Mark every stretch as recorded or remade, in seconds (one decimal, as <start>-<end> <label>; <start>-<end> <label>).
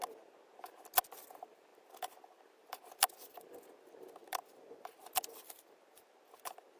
0.0-1.7 recorded; 1.7-3.7 remade; 3.7-4.2 recorded; 4.2-6.8 remade